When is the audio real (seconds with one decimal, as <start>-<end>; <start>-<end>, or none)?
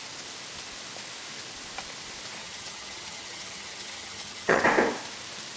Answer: 0.0-2.4; 4.6-5.6